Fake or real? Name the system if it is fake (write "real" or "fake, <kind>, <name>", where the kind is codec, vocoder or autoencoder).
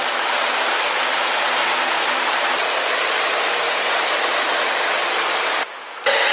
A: fake, vocoder, BigVGAN v2